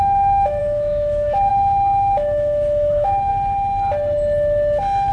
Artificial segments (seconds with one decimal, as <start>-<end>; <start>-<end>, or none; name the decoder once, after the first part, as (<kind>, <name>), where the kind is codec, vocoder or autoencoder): 0.0-3.3 (autoencoder, DAC-VAE)

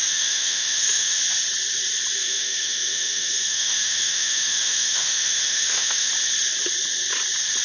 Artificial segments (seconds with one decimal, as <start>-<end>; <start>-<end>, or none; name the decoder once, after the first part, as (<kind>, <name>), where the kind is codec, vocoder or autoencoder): 0.0-1.2 (autoencoder, DAC-VAE); 2.2-6.1

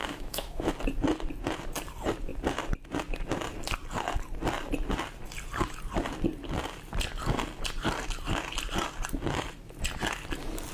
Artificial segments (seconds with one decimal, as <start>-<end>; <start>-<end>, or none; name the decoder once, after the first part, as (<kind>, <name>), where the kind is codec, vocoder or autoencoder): 0.0-0.7 (autoencoder, DAC-VAE)

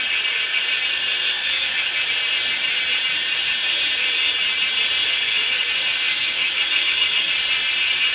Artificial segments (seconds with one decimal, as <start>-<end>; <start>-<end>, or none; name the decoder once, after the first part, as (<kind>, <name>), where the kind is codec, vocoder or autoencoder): 1.4-2.1 (autoencoder, DAC-VAE); 5.0-5.6; 6.1-7.3

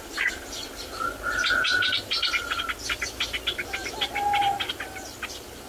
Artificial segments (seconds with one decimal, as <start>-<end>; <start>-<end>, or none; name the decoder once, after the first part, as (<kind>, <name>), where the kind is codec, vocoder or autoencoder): none

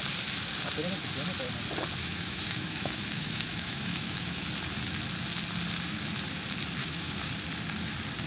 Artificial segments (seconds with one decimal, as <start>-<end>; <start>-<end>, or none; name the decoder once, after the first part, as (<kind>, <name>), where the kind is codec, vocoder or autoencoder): 2.0-4.4 (autoencoder, DAC-VAE); 6.8-7.3